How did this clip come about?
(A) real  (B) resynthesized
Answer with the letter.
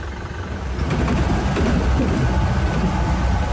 A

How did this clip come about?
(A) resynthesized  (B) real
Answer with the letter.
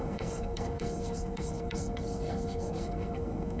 A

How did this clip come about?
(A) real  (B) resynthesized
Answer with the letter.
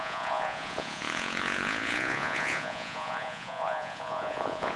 B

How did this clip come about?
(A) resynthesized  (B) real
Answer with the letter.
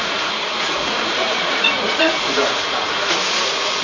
A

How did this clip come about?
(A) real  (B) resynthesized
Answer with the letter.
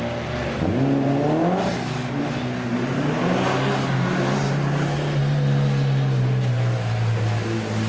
A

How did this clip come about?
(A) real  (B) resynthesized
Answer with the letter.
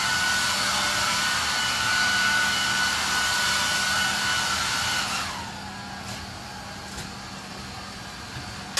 A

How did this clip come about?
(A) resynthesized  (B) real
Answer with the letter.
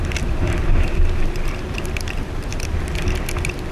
B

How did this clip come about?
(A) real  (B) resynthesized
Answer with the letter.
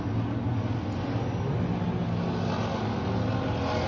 A